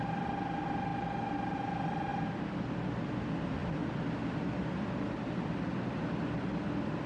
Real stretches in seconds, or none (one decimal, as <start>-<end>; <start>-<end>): 0.9-1.5; 2.1-2.6